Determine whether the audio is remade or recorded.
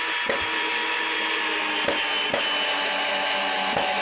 recorded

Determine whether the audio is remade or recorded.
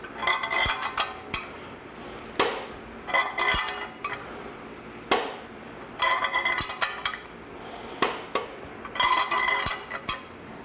recorded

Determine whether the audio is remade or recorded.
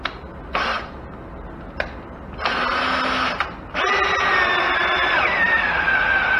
recorded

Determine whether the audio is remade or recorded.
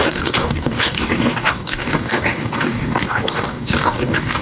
remade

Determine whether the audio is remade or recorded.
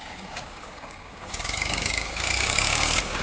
remade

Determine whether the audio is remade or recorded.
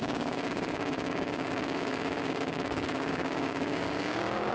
remade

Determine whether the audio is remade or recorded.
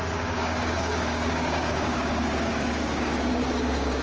remade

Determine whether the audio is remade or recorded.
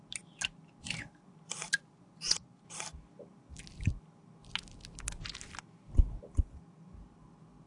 recorded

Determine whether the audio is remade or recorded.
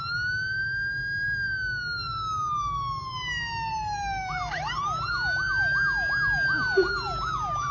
recorded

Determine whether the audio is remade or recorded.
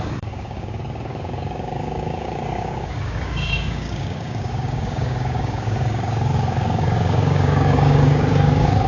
remade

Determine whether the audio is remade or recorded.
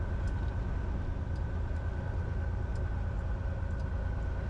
recorded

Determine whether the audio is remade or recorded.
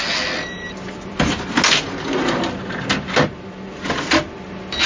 recorded